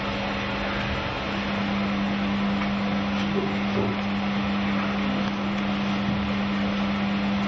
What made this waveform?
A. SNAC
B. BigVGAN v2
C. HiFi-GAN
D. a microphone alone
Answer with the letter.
D